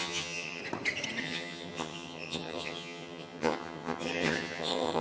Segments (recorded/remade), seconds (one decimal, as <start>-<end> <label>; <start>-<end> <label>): 0.0-0.6 remade; 0.6-1.2 recorded; 1.2-5.0 remade